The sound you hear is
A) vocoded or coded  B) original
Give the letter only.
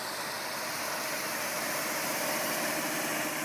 A